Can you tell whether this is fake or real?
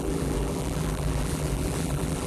fake